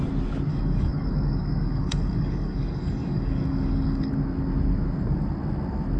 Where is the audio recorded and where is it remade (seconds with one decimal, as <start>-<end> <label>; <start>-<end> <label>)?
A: 0.0-0.5 recorded; 0.5-4.1 remade; 4.1-6.0 recorded